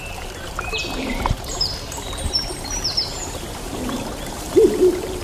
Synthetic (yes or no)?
yes